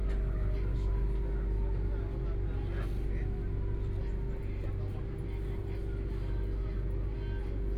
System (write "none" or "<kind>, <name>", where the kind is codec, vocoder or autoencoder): none